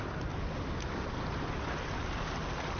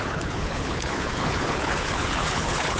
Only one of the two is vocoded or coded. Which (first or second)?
second